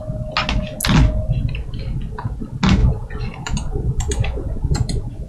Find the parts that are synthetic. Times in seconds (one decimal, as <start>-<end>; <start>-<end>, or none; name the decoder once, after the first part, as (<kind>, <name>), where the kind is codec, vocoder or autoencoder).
2.8-5.3 (vocoder, Vocos)